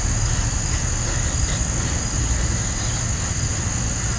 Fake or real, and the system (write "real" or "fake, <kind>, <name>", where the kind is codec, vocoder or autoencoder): real